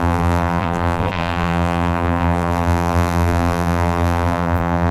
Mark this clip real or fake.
fake